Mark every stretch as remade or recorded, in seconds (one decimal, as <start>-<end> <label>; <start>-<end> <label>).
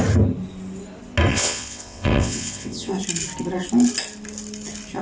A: 0.0-1.3 recorded; 1.3-2.9 remade; 2.9-5.0 recorded